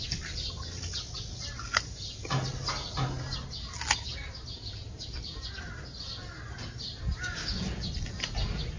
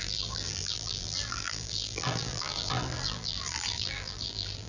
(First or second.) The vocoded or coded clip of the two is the second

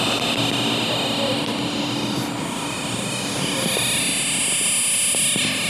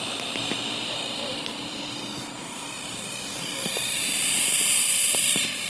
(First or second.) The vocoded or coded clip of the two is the second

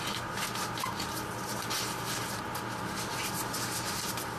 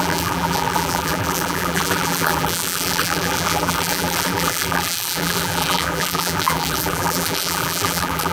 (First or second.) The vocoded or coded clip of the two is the second